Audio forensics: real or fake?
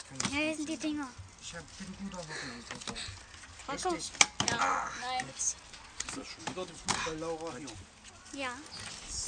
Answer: real